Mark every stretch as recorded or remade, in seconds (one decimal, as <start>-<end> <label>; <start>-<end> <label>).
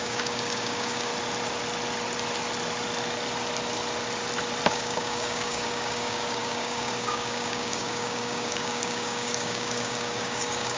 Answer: 0.0-1.1 remade; 1.1-4.7 recorded; 4.7-10.8 remade